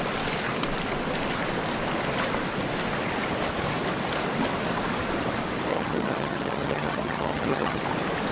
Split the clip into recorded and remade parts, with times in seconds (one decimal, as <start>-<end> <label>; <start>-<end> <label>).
0.0-5.7 recorded; 5.7-7.8 remade; 7.8-8.3 recorded